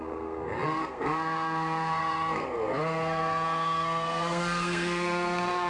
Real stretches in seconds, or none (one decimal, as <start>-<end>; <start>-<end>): none